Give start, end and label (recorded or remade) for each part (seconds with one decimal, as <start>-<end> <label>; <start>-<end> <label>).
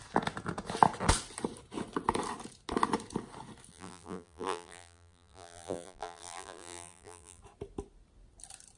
0.0-3.7 recorded; 3.7-7.4 remade; 7.4-8.8 recorded